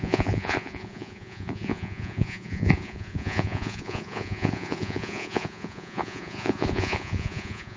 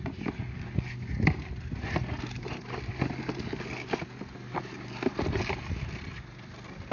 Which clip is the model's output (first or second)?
first